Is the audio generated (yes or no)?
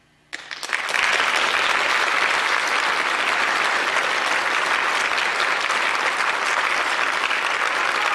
no